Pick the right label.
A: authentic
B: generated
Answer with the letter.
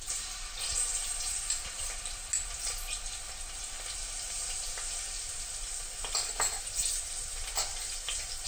A